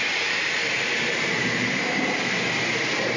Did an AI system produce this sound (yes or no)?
yes